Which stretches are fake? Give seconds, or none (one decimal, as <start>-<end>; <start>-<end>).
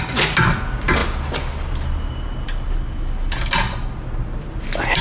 none